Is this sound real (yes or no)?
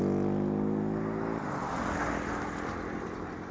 yes